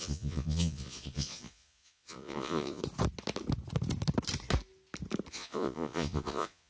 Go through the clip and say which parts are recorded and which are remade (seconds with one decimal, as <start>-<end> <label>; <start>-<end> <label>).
0.0-2.8 remade; 2.8-5.3 recorded; 5.3-6.7 remade